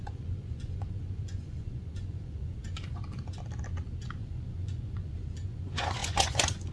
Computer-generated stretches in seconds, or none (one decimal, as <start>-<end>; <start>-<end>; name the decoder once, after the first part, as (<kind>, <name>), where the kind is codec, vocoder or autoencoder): 0.0-3.0 (vocoder, Vocos); 4.2-6.7